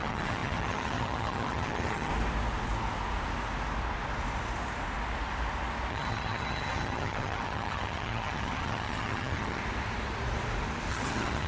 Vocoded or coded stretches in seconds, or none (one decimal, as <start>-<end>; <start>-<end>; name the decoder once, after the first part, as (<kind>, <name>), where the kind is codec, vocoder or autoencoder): 0.0-2.1 (vocoder, HiFi-GAN); 5.9-9.6; 10.9-11.5